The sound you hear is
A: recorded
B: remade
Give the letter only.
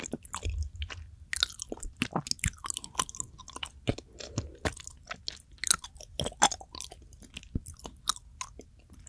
A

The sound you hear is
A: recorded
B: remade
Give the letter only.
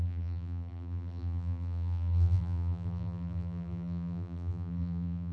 B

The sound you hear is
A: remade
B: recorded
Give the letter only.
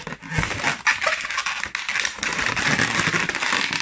B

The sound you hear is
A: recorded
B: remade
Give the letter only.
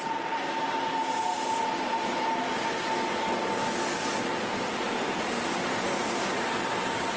A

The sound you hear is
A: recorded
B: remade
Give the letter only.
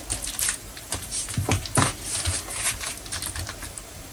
B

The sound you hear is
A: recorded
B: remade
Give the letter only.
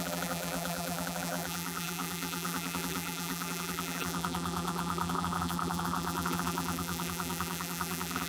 B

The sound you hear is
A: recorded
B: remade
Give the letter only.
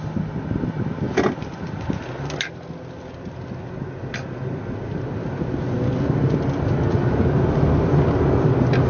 A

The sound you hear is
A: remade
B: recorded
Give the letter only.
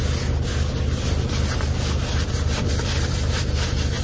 B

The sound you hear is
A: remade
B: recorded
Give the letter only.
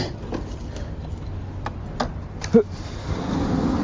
B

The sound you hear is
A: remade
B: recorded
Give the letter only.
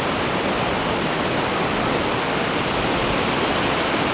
B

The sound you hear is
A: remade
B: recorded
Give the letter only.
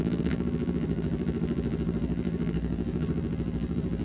A